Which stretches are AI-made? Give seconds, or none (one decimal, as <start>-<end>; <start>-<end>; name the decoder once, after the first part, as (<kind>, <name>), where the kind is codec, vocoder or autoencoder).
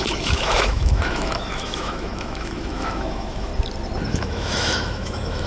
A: 0.0-3.5 (autoencoder, DAC-VAE); 4.1-5.5